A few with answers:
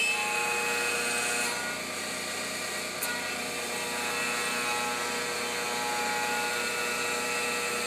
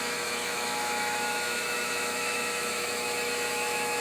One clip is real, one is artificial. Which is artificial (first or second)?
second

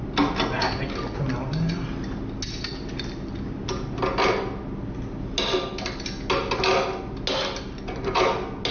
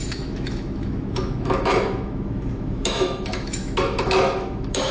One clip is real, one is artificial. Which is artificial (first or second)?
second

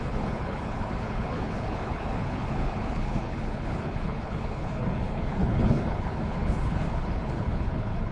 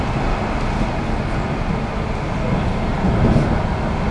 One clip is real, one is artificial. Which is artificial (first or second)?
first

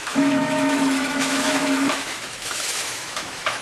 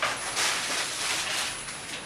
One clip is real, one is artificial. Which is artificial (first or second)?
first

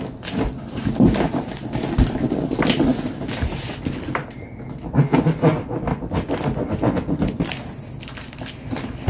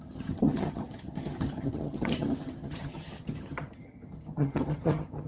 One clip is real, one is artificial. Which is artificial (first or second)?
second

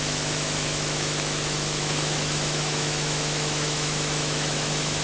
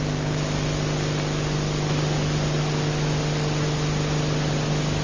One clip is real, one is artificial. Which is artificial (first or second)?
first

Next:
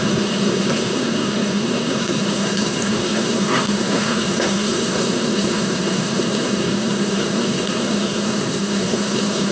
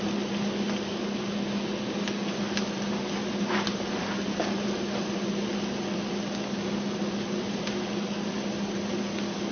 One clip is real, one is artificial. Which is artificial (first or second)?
first